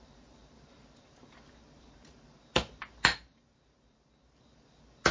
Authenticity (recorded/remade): remade